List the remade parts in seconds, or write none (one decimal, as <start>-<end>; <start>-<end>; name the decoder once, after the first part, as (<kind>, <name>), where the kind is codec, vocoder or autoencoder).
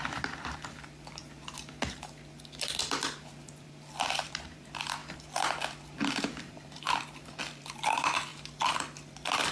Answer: 0.0-1.2 (vocoder, BigVGAN v2); 2.6-8.3; 9.1-9.5